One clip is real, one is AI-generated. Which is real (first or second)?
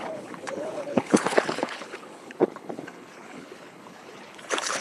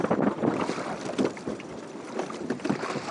second